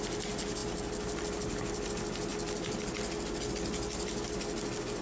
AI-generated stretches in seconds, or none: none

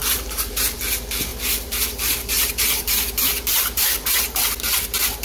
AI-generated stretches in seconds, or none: 0.0-0.8 (vocoder, BigVGAN v2); 1.3-4.4